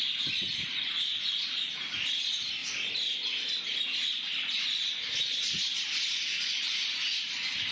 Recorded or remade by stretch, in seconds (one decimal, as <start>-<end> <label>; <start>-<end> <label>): 0.0-7.7 recorded